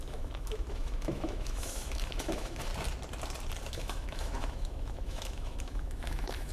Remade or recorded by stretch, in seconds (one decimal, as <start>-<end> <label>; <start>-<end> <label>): 0.0-2.7 remade; 2.7-3.7 recorded; 3.7-6.5 remade